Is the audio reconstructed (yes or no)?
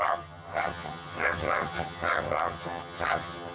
yes